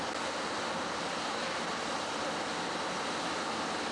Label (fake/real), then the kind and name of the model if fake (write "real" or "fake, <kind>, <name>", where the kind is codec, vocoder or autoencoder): real